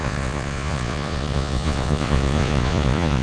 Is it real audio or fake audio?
fake